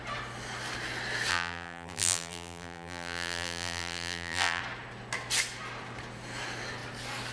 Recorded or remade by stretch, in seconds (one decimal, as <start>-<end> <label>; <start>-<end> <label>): 0.0-1.3 recorded; 1.3-4.6 remade; 4.6-7.3 recorded